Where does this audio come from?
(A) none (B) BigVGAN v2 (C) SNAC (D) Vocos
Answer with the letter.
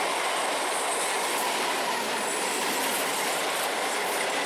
A